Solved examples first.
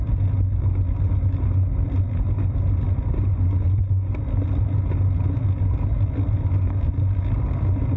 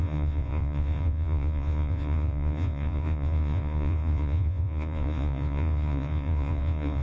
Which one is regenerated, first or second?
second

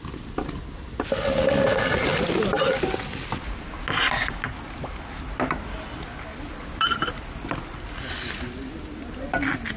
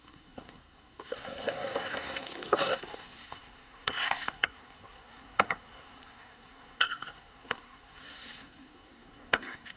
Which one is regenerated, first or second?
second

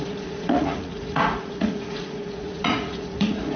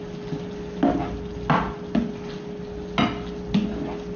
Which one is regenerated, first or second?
first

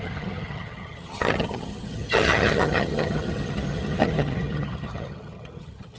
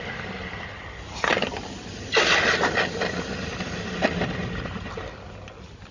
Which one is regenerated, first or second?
first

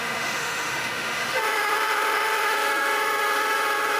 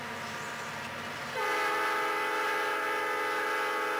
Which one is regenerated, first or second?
first